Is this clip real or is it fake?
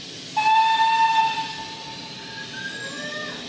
real